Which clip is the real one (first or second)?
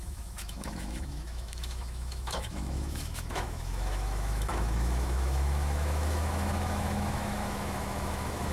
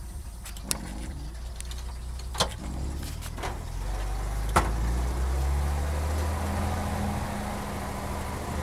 second